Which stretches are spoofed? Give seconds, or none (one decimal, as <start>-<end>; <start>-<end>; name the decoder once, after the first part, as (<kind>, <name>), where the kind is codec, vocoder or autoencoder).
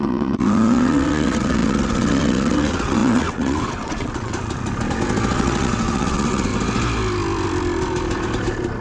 0.0-4.3 (vocoder, WaveNeXt); 5.3-6.5